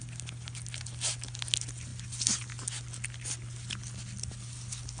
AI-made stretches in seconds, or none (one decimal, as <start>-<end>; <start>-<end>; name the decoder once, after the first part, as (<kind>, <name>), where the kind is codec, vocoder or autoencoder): none